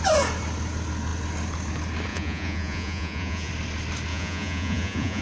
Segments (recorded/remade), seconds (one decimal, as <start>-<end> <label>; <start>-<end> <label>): 0.0-2.1 recorded; 2.1-3.5 remade; 3.5-4.1 recorded; 4.1-5.2 remade